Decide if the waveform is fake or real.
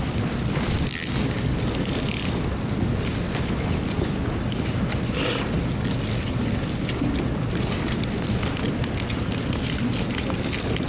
real